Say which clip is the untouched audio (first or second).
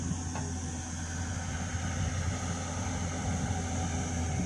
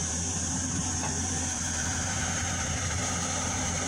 first